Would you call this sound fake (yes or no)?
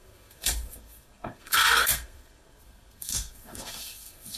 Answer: yes